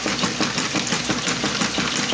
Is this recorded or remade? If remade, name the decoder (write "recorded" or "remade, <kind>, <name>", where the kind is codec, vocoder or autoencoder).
recorded